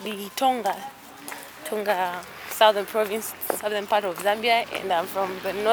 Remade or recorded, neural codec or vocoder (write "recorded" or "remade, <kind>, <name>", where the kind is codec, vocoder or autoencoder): recorded